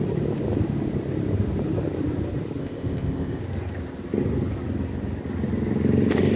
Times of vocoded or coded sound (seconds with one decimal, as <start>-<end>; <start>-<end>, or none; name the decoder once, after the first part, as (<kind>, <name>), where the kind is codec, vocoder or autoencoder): 2.6-3.4 (codec, ZipCodec)